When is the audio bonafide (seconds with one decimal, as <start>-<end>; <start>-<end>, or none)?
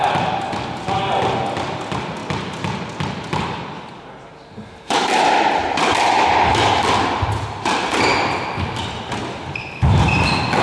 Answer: 0.0-10.6